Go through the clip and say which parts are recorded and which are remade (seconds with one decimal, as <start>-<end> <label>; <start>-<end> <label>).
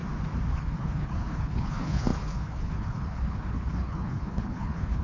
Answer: 0.0-0.5 recorded; 0.5-5.0 remade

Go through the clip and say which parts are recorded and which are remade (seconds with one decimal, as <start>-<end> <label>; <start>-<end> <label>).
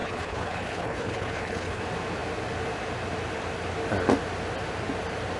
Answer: 0.0-1.8 remade; 1.8-5.4 recorded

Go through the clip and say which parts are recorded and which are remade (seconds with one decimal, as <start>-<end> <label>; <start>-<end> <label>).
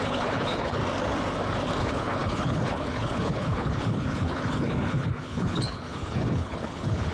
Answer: 0.0-0.8 remade; 0.8-1.8 recorded; 1.8-7.1 remade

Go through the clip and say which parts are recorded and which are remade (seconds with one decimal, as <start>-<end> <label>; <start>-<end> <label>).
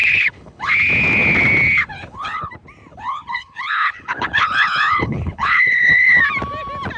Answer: 0.0-0.7 remade; 0.7-1.9 recorded; 1.9-2.5 remade; 2.5-2.9 recorded; 2.9-6.2 remade; 6.2-7.0 recorded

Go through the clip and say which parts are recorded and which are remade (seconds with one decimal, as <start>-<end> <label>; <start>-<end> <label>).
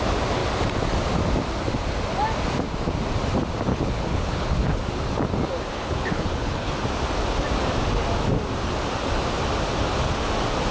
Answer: 0.0-3.7 recorded; 3.7-4.8 remade; 4.8-5.7 recorded; 5.7-6.8 remade; 6.8-10.7 recorded